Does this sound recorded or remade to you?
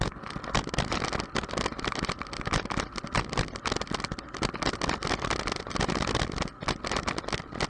recorded